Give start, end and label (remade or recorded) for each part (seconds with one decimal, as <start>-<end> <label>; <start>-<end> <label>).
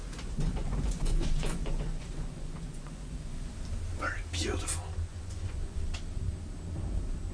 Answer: 0.0-3.5 remade; 3.5-5.1 recorded; 5.1-5.8 remade; 5.8-7.3 recorded